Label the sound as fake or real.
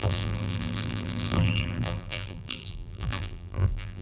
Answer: fake